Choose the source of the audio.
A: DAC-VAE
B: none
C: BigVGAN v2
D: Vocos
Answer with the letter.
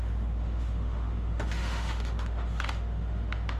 A